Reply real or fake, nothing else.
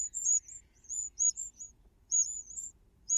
fake